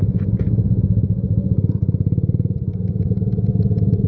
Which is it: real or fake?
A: real